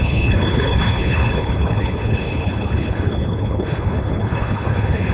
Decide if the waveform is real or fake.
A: fake